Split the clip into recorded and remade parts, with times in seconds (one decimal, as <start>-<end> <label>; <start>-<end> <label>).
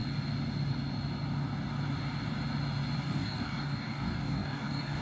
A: 0.0-3.0 recorded; 3.0-5.0 remade